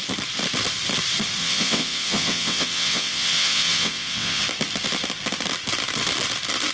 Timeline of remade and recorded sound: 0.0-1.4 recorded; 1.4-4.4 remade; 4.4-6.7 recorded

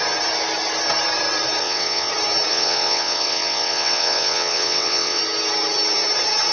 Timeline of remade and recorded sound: 0.0-1.6 recorded; 1.6-2.1 remade; 2.1-2.5 recorded; 2.5-5.2 remade; 5.2-6.5 recorded

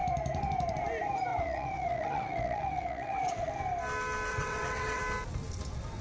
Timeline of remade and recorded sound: 0.0-1.3 recorded; 1.3-3.5 remade; 3.5-4.3 recorded; 4.3-5.0 remade; 5.0-6.0 recorded

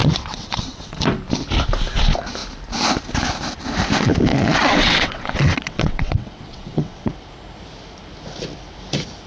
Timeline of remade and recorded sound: 0.0-1.0 remade; 1.0-4.3 recorded; 4.3-7.1 remade; 7.1-9.3 recorded

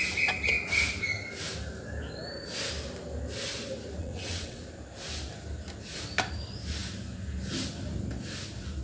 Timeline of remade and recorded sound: 0.0-4.0 recorded; 4.0-4.6 remade; 4.6-8.8 recorded